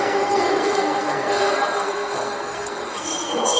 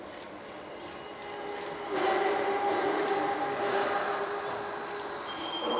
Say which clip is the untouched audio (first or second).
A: second